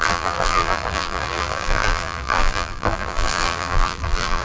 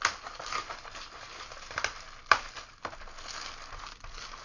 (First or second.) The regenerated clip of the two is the first